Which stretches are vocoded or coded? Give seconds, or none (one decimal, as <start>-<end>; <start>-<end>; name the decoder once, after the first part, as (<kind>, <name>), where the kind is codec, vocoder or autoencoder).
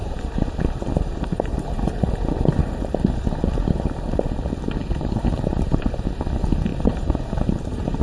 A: 0.0-3.4 (vocoder, BigVGAN v2); 4.8-6.1; 6.7-8.0